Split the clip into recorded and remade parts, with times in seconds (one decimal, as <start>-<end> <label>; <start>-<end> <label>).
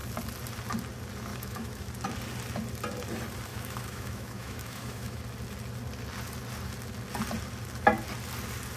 0.0-1.3 recorded; 1.3-1.9 remade; 1.9-3.5 recorded; 3.5-5.2 remade; 5.2-8.8 recorded